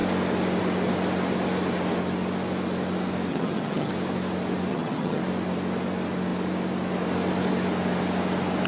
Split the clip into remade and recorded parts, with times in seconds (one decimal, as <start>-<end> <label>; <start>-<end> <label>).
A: 0.0-3.3 recorded; 3.3-3.9 remade; 3.9-4.7 recorded; 4.7-5.2 remade; 5.2-8.7 recorded